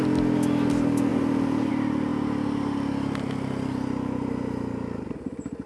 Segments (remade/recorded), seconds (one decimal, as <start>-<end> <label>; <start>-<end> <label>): 0.0-5.7 recorded

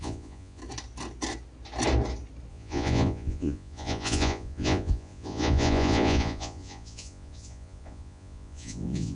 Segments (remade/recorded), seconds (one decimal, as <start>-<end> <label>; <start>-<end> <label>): 0.0-0.6 remade; 0.6-2.5 recorded; 2.5-9.1 remade

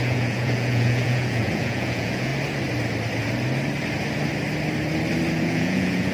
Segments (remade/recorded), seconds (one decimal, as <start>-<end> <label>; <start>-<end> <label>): 0.0-2.3 remade; 2.3-5.3 recorded; 5.3-6.1 remade